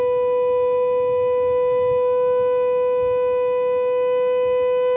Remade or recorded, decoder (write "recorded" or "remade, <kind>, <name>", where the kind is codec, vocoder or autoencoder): recorded